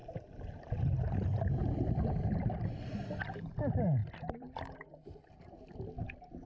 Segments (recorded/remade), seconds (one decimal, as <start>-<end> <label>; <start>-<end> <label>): 0.0-6.5 recorded